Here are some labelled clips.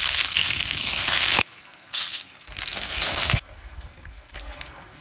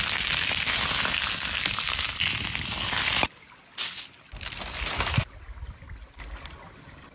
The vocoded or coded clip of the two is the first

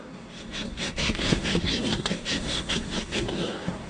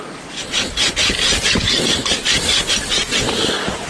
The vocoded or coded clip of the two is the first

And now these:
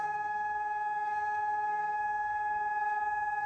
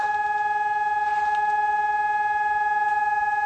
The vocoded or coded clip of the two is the first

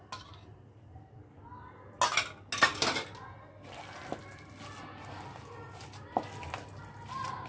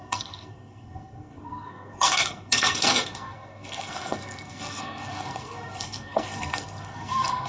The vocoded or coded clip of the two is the second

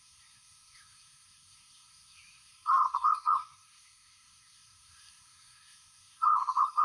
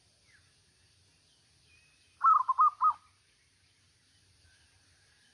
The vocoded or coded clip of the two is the first